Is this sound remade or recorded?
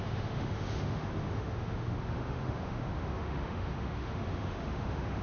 remade